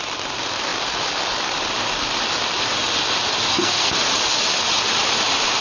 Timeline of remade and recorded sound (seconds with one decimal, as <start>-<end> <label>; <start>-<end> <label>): 0.0-3.5 recorded; 3.5-4.0 remade; 4.0-5.6 recorded